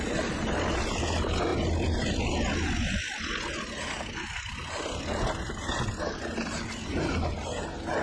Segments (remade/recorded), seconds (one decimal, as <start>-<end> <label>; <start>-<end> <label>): 0.0-8.0 recorded